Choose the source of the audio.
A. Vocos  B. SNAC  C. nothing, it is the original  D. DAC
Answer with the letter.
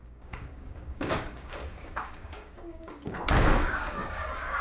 D